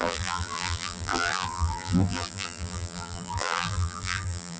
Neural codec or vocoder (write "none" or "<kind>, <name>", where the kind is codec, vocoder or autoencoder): vocoder, BigVGAN v2